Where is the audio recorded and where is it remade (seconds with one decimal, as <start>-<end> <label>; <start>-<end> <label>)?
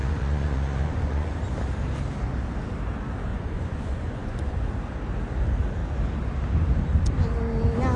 0.0-1.4 remade; 1.4-3.3 recorded; 3.3-4.7 remade; 4.7-8.0 recorded